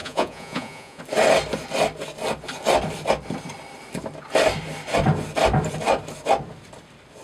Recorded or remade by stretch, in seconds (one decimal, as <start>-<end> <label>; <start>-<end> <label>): 0.0-1.0 remade; 1.0-7.2 recorded